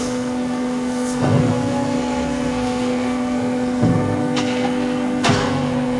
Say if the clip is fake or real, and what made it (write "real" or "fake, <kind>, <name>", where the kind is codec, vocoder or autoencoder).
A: fake, codec, SNAC